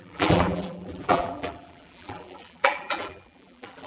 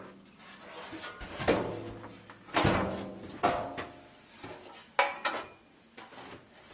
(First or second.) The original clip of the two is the second